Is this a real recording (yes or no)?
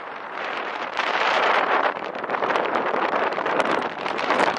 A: no